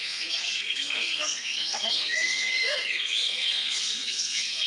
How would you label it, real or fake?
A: fake